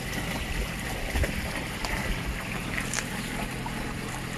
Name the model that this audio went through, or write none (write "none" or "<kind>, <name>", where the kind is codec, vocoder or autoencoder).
none